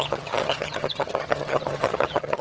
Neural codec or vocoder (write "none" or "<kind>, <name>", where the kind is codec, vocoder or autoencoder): vocoder, HiFi-GAN